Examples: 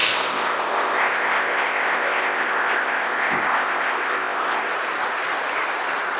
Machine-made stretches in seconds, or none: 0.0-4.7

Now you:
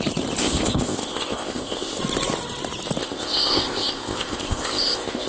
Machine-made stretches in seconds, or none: 0.4-2.0; 3.0-5.3

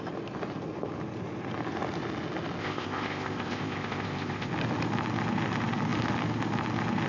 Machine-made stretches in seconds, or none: 2.6-4.5

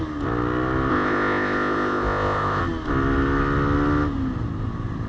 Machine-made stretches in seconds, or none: 0.9-2.6